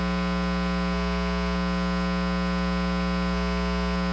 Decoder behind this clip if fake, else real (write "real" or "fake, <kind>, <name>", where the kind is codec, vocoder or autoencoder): real